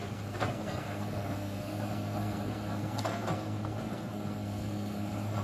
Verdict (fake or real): fake